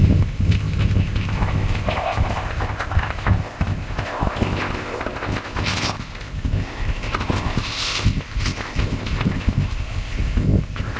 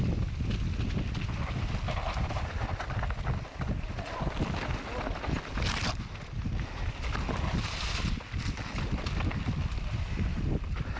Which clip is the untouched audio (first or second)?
second